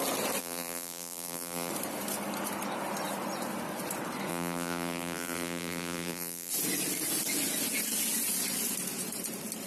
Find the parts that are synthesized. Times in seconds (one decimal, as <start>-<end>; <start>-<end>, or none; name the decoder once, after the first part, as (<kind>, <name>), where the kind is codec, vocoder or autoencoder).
0.4-1.7 (vocoder, BigVGAN v2); 4.3-6.5